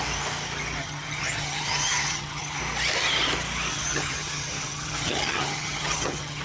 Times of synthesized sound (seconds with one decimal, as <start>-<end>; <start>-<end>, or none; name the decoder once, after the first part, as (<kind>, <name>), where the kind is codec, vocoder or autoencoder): 0.8-2.6 (vocoder, HiFi-GAN); 3.7-6.4